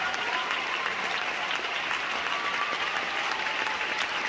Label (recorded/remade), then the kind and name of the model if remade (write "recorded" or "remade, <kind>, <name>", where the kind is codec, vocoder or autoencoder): remade, vocoder, BigVGAN v2